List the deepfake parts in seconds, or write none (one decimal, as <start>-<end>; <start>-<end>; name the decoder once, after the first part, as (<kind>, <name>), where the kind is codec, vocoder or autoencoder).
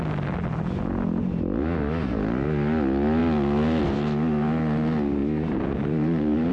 none